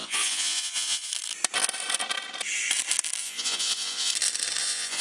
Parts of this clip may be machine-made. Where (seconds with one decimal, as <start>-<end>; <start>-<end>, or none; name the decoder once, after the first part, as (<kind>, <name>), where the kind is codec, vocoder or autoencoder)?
0.0-1.1 (vocoder, Vocos); 3.2-4.1; 4.6-5.0